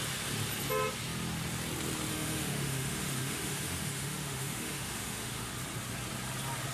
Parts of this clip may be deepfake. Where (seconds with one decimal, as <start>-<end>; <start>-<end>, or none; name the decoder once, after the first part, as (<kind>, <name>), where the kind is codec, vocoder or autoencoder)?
2.1-5.5 (autoencoder, DAC-VAE)